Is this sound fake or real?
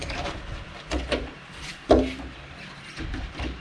real